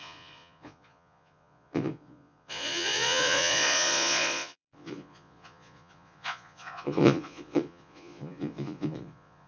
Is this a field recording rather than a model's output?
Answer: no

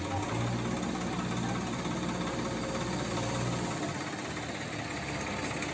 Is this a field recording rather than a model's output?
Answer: yes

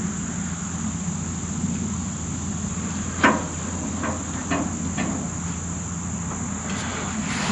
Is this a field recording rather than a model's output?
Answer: yes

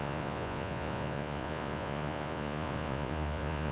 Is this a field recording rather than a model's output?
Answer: no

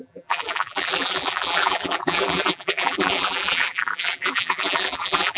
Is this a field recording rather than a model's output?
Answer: no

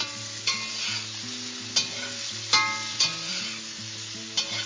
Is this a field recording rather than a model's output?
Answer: yes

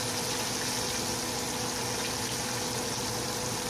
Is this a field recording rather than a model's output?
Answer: yes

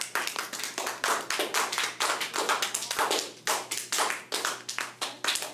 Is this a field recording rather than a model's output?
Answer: yes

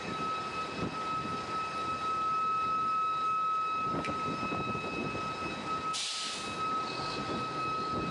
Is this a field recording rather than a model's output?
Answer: yes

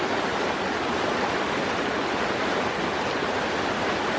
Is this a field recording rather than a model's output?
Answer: yes